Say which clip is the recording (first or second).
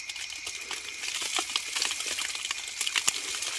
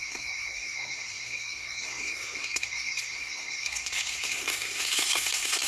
first